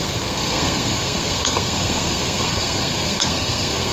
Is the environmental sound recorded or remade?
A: remade